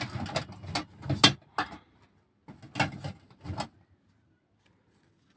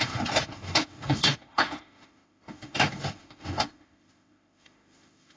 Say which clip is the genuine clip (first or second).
first